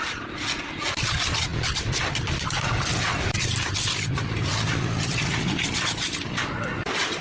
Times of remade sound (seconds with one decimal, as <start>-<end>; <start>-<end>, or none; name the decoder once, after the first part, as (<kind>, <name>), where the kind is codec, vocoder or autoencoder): none